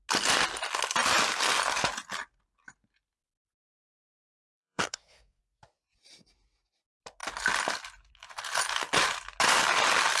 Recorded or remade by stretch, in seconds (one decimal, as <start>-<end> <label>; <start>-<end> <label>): 0.0-4.3 recorded; 4.3-5.4 remade; 5.4-10.2 recorded